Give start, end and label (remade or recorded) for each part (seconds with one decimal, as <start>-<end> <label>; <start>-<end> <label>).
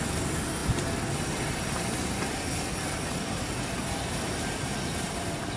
0.0-5.6 recorded